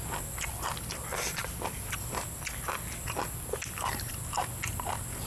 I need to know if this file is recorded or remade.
recorded